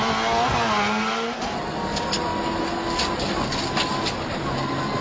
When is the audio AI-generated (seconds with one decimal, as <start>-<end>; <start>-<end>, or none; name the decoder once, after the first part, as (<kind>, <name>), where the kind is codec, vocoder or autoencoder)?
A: none